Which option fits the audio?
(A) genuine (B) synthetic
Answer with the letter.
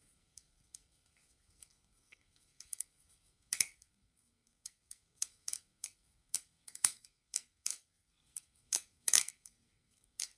B